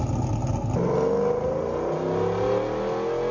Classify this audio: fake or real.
real